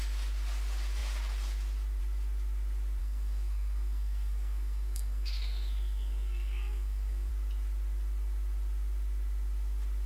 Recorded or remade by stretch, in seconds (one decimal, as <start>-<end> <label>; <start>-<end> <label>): 0.0-3.0 recorded; 3.0-7.3 remade; 7.3-10.1 recorded